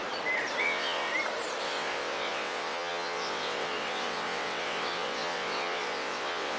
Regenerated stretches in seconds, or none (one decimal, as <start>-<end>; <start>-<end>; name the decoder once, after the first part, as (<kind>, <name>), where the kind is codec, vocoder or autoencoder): 0.6-1.1 (vocoder, WaveNeXt); 1.6-6.6